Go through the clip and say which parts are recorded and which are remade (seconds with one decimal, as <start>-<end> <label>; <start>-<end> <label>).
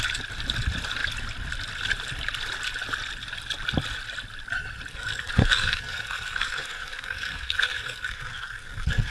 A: 0.0-4.9 recorded; 4.9-9.1 remade